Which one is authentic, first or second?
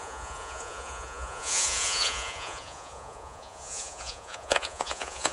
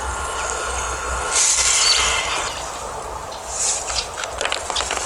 second